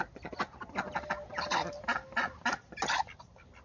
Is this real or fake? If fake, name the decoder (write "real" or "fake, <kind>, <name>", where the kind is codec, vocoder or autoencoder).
real